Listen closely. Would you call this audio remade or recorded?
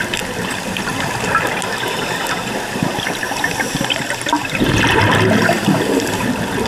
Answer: recorded